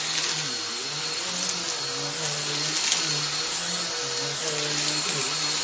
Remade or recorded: recorded